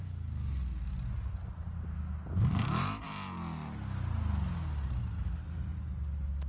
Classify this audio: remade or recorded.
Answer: recorded